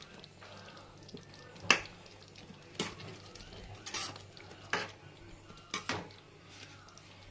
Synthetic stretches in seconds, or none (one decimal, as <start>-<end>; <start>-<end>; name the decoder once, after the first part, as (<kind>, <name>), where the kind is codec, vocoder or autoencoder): none